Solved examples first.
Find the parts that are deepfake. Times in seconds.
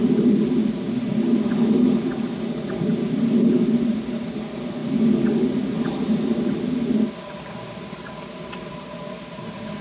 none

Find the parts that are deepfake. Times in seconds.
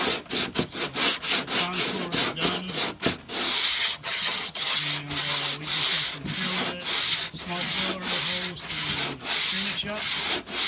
3.8-4.8 (vocoder, HiFi-GAN)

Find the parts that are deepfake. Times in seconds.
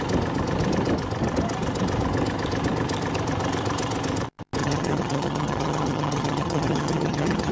4.6-7.5 (vocoder, HiFi-GAN)